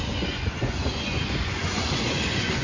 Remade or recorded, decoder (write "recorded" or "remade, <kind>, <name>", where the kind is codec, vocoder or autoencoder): remade, vocoder, Vocos